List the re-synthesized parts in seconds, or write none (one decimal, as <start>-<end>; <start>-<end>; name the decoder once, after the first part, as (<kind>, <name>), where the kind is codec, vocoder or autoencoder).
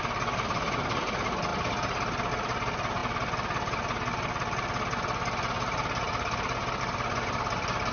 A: none